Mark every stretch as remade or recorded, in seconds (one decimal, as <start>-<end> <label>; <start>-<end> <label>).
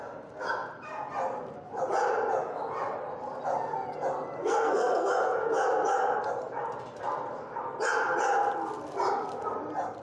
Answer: 0.0-4.4 recorded; 4.4-5.1 remade; 5.1-10.0 recorded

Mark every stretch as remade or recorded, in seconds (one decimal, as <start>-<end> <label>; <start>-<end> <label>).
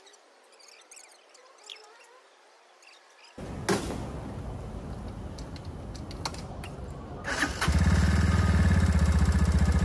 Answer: 0.0-9.8 recorded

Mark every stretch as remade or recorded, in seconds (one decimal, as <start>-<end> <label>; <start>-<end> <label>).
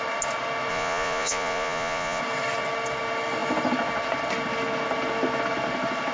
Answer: 0.0-0.7 recorded; 0.7-2.2 remade; 2.2-6.1 recorded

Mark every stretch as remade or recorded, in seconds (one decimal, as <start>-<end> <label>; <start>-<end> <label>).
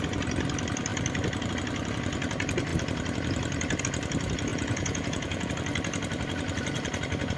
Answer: 0.0-4.5 recorded; 4.5-5.5 remade; 5.5-7.4 recorded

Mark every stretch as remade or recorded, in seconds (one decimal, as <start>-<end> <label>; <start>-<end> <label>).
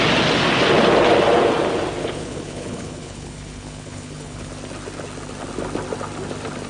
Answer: 0.0-2.0 recorded; 2.0-4.5 remade; 4.5-6.7 recorded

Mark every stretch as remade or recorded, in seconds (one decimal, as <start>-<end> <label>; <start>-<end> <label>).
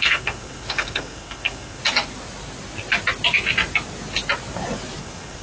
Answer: 0.0-1.8 remade; 1.8-5.0 recorded; 5.0-5.4 remade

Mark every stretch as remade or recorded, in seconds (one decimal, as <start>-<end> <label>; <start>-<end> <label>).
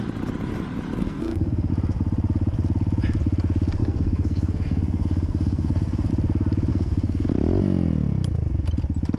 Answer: 0.0-1.0 recorded; 1.0-1.7 remade; 1.7-3.8 recorded; 3.8-6.1 remade; 6.1-6.7 recorded; 6.7-7.3 remade; 7.3-9.2 recorded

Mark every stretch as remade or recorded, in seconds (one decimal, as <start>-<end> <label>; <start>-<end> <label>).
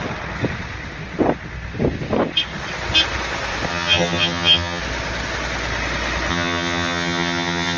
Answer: 0.0-3.7 recorded; 3.7-4.8 remade; 4.8-6.3 recorded; 6.3-7.8 remade